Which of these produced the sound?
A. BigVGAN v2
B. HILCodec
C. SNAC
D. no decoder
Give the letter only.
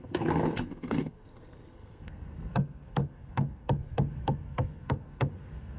C